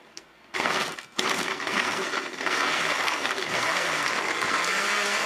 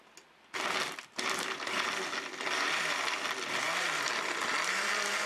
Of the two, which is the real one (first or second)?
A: second